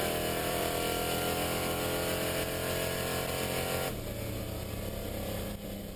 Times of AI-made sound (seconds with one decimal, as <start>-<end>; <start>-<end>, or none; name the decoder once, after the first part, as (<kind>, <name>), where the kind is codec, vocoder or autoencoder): 0.0-0.6 (vocoder, BigVGAN v2)